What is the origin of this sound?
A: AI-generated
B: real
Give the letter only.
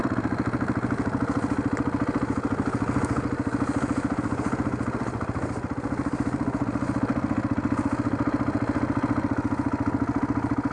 B